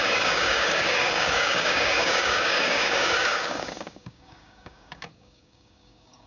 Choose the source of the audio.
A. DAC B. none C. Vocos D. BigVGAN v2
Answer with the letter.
A